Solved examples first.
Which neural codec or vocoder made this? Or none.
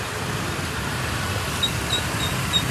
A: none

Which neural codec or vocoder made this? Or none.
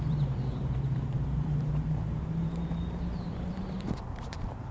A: vocoder, BigVGAN v2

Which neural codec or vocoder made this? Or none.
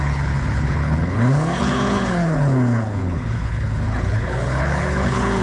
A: codec, HILCodec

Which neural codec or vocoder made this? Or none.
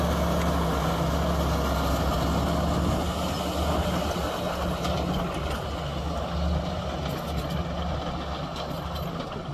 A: none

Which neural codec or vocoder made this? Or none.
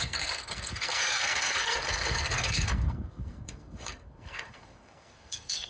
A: codec, SNAC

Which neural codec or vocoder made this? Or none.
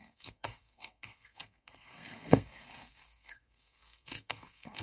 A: codec, SNAC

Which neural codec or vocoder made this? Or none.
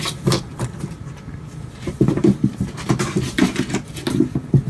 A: vocoder, BigVGAN v2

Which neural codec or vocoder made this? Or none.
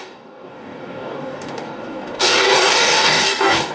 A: codec, DAC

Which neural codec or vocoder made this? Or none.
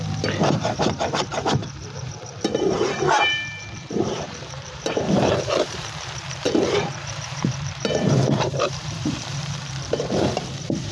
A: vocoder, BigVGAN v2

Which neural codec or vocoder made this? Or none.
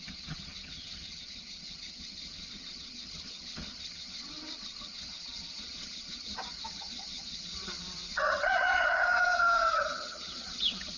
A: vocoder, HiFi-GAN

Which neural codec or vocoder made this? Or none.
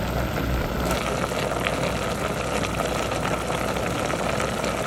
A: none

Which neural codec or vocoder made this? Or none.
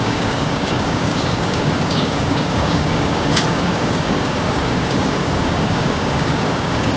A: codec, DAC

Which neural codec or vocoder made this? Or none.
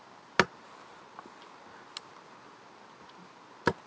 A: none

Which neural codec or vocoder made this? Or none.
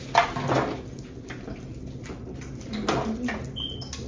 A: none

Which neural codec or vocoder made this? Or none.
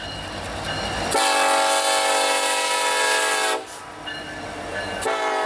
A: none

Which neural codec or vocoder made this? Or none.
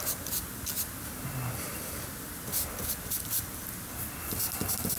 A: none